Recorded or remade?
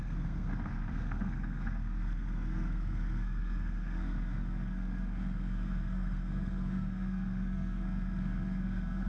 remade